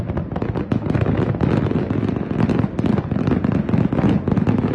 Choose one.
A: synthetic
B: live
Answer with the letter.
B